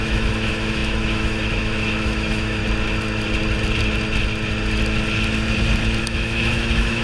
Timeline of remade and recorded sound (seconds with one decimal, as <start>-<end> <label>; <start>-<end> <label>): 0.0-2.6 remade; 2.6-6.0 recorded; 6.0-7.0 remade